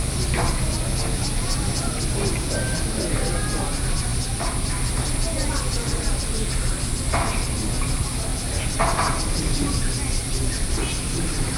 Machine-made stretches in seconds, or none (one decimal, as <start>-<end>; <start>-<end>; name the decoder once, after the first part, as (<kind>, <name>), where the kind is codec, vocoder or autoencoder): 10.2-11.6 (vocoder, BigVGAN v2)